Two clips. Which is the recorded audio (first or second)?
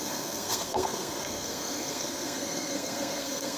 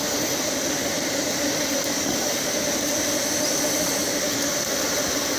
second